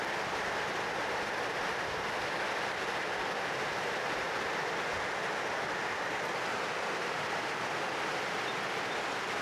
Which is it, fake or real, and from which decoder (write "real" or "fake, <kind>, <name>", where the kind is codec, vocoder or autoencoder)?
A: real